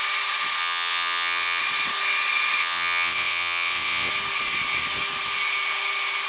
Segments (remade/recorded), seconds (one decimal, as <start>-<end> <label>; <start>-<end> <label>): 0.0-0.6 recorded; 0.6-1.6 remade; 1.6-2.6 recorded; 2.6-4.1 remade; 4.1-6.3 recorded